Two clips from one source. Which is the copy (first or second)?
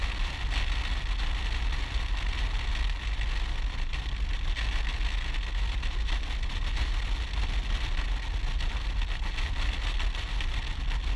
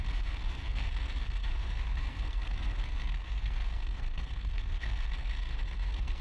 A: second